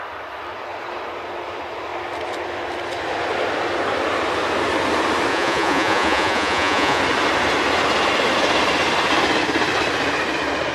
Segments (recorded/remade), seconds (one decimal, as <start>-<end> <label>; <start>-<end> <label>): 0.0-5.3 recorded; 5.3-7.0 remade; 7.0-10.7 recorded